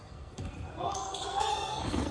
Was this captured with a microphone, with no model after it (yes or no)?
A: no